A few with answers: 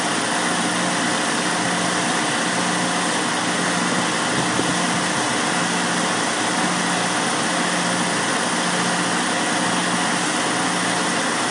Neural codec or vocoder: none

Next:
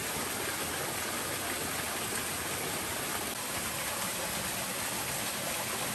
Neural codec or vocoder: none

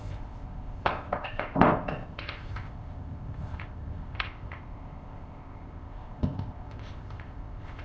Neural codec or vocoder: codec, ZipCodec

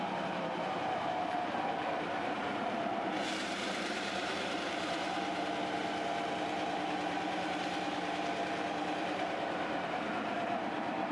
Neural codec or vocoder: vocoder, BigVGAN v2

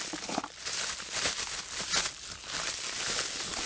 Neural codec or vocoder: none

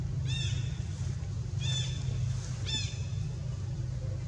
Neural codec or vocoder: none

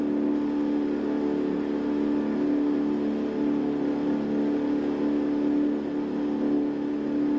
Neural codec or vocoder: none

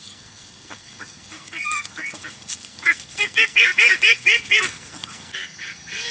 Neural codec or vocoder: codec, SNAC